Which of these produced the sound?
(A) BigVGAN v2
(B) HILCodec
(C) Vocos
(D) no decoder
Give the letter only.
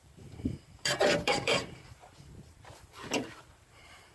A